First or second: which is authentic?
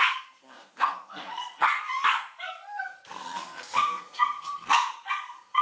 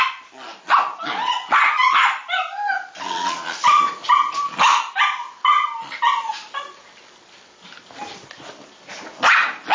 second